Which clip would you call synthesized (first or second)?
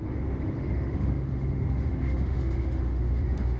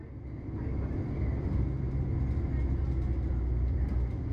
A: first